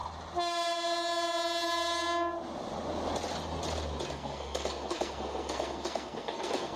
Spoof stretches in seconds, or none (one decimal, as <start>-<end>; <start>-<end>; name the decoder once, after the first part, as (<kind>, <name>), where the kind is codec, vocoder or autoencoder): 4.1-6.8 (codec, SNAC)